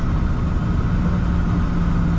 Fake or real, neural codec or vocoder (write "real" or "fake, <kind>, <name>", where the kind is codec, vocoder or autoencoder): real